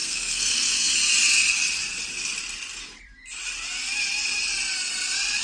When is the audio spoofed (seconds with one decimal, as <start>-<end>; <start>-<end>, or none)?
0.0-0.9

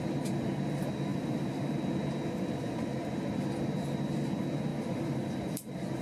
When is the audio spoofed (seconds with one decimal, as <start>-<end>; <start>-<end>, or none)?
1.1-1.8; 4.7-6.0

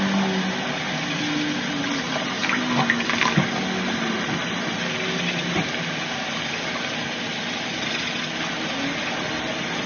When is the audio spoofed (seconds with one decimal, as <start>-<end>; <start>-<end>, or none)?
none

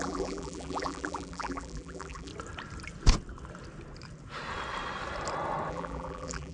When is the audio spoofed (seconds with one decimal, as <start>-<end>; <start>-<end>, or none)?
0.0-2.3; 5.7-6.5

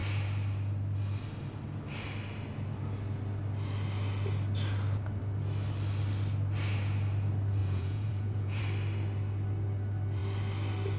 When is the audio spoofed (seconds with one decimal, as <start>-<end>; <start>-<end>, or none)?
7.6-8.6

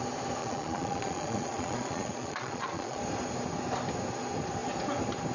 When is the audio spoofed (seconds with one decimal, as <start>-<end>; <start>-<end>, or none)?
0.4-3.0